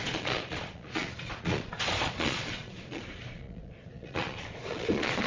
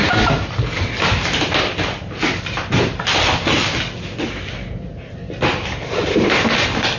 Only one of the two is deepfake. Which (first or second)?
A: first